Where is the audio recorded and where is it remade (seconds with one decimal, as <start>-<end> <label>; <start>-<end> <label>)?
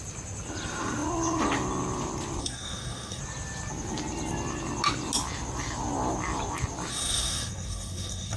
0.0-2.4 recorded; 2.4-3.2 remade; 3.2-6.9 recorded; 6.9-8.4 remade